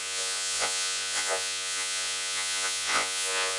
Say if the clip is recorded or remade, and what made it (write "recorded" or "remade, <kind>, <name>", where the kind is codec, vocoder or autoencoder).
remade, vocoder, Vocos